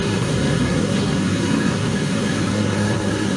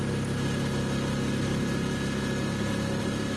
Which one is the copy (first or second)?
first